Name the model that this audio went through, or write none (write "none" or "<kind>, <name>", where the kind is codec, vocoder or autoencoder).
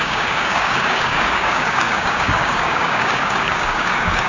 codec, DAC